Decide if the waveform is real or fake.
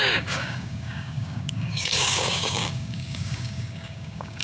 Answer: fake